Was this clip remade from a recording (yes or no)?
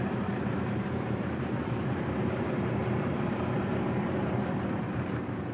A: yes